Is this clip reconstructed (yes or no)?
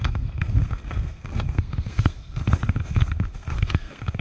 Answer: yes